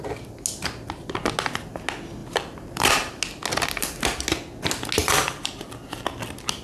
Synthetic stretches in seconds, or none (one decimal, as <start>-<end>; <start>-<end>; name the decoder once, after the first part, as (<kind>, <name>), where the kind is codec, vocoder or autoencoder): 2.2-3.2 (vocoder, BigVGAN v2); 5.0-5.7